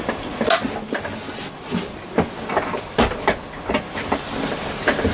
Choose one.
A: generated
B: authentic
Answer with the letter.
B